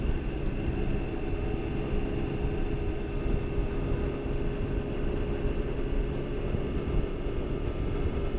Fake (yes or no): no